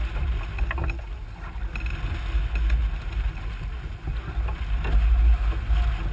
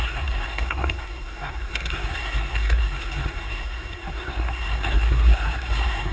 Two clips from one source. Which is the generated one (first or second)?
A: second